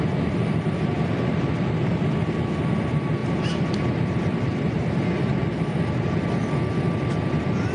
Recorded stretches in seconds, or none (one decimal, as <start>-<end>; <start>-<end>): 0.0-3.2; 6.6-7.7